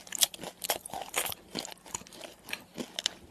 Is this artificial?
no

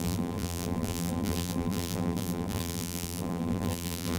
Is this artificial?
yes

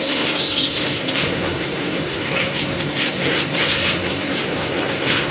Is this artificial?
yes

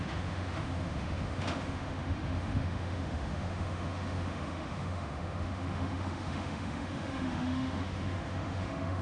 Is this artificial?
yes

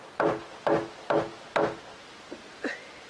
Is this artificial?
no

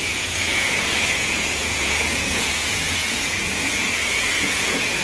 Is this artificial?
yes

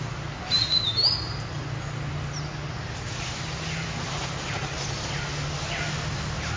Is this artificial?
no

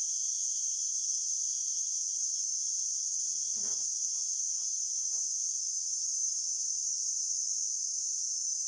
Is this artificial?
yes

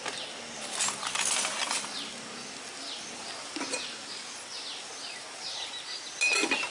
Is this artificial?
no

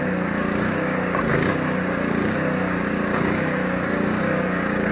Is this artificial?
yes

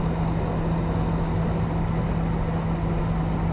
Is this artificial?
no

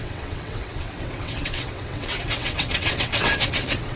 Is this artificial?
yes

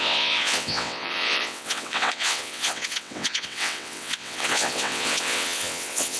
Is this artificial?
yes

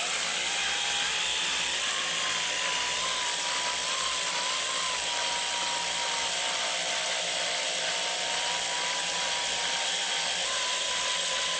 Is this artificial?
no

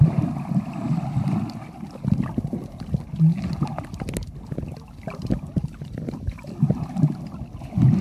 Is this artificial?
no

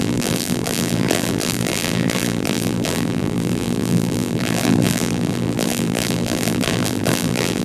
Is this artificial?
yes